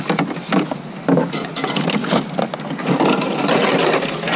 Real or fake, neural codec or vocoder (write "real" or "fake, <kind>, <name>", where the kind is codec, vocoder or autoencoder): real